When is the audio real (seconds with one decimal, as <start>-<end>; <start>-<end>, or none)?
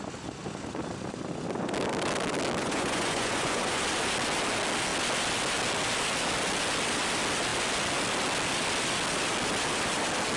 0.0-2.6; 3.8-10.4